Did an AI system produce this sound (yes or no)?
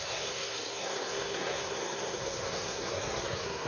yes